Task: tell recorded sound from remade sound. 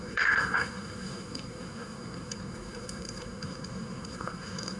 remade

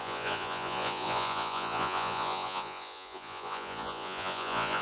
remade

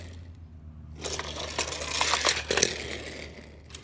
recorded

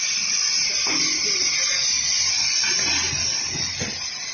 recorded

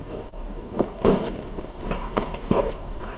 remade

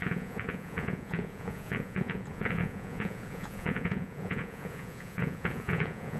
remade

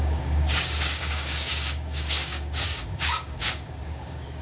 remade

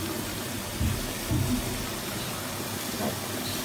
recorded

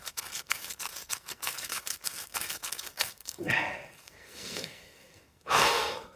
remade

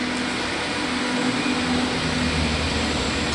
recorded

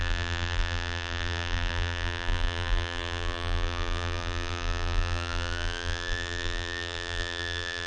remade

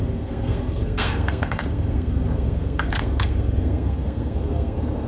remade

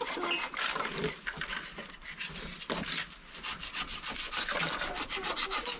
recorded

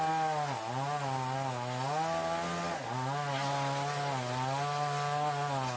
recorded